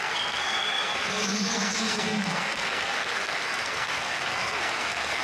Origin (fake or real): fake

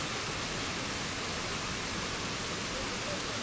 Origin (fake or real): real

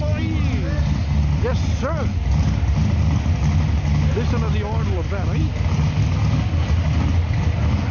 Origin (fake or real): real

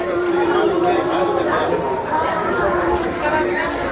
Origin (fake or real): real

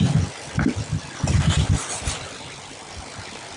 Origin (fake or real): real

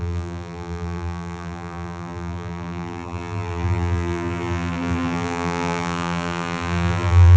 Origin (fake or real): fake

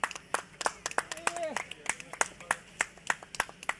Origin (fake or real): real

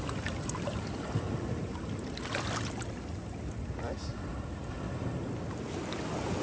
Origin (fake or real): real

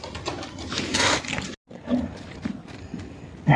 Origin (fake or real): real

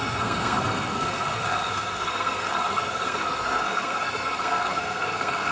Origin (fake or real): fake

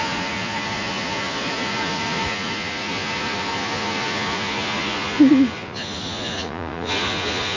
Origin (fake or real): fake